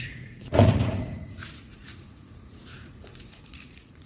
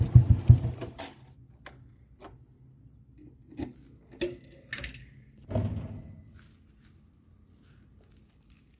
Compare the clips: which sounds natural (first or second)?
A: second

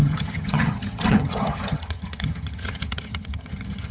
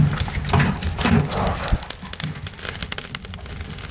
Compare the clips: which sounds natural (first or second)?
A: second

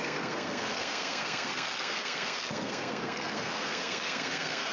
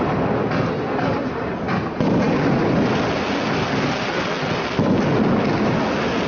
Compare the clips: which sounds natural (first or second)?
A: second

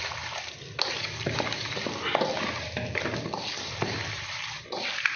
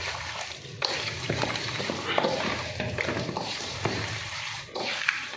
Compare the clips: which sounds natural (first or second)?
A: first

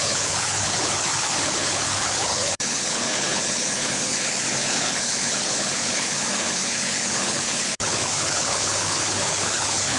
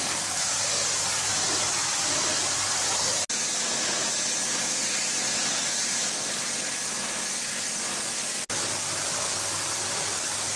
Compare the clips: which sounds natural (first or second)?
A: second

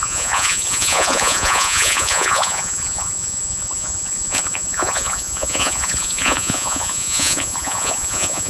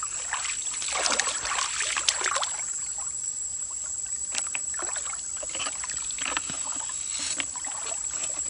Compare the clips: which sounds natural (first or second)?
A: second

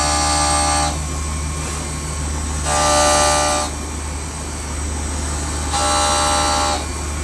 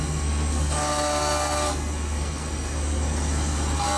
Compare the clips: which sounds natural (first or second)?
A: first